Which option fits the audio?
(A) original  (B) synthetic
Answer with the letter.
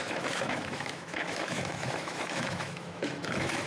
B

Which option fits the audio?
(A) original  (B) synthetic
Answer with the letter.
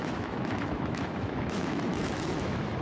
B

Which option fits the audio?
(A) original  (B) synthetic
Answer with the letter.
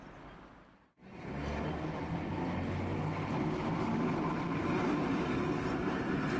A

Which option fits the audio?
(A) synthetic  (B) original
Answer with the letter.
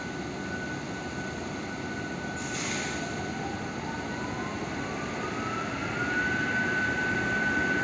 B